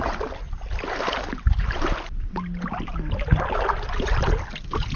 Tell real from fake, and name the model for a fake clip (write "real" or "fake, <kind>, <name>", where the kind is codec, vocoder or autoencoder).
real